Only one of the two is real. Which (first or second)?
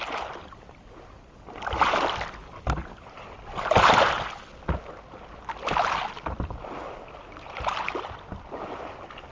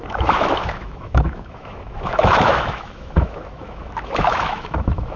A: first